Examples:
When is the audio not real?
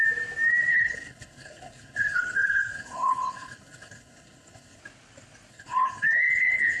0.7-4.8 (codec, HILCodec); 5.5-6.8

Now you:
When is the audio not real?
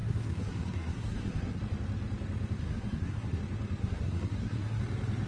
0.0-1.6 (codec, SNAC); 2.6-3.4; 3.8-4.8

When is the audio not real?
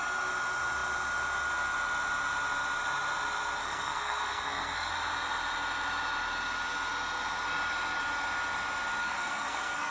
3.6-4.9 (codec, SNAC); 9.0-9.9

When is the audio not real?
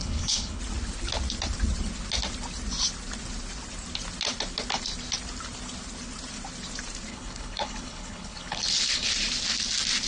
0.0-0.6 (codec, HILCodec); 7.1-9.1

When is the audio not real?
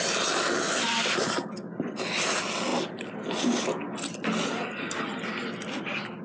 none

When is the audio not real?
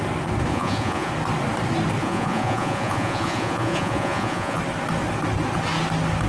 0.5-1.1 (vocoder, Vocos); 2.0-4.6